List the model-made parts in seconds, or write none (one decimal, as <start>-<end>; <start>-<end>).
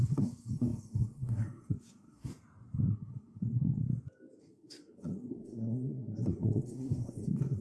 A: 0.0-2.3; 2.9-3.8; 4.4-7.6